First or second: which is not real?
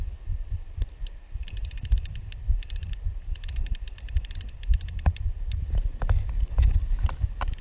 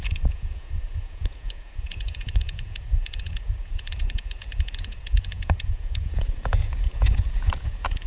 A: second